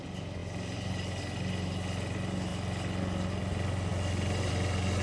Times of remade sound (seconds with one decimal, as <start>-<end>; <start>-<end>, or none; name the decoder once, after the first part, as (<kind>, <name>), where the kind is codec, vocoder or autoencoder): none

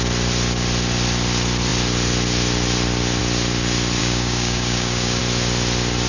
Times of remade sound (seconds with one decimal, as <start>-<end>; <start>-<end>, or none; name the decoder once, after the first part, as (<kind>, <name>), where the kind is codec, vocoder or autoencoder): 4.0-5.2 (codec, DAC)

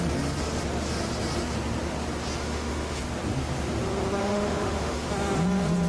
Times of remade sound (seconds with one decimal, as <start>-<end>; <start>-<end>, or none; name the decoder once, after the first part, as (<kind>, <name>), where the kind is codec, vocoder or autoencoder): 2.4-3.0 (autoencoder, DAC-VAE); 4.2-5.1

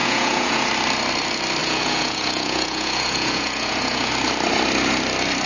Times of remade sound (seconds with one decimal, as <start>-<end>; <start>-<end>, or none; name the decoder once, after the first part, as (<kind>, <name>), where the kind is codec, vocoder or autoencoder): 0.0-0.7 (vocoder, Vocos); 1.6-4.1

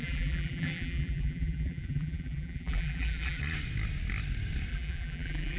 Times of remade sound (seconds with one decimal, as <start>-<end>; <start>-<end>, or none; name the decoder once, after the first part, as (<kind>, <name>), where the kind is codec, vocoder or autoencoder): 0.0-3.4 (vocoder, BigVGAN v2); 4.7-5.6

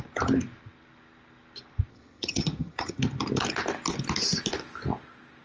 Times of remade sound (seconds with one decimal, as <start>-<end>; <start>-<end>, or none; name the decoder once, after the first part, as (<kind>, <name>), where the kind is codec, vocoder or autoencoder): 1.9-3.0 (vocoder, HiFi-GAN)